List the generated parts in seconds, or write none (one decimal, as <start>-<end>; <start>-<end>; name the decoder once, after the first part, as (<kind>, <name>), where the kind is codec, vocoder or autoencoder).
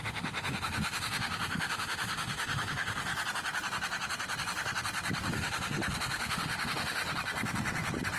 0.0-3.1 (autoencoder, DAC-VAE); 5.3-7.0